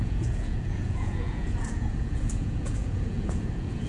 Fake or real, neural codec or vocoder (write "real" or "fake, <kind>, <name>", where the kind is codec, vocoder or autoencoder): fake, vocoder, Vocos